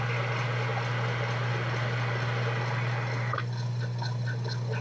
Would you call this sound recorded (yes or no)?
yes